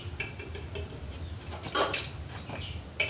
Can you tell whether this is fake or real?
real